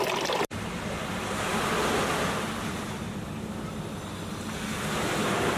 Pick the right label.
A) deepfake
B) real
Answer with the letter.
B